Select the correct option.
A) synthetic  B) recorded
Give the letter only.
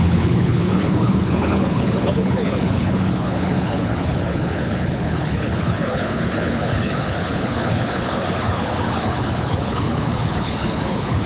A